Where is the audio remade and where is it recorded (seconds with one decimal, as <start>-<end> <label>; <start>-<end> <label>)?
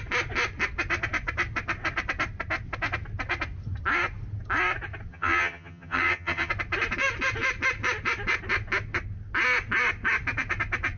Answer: 0.0-5.1 recorded; 5.1-6.5 remade; 6.5-11.0 recorded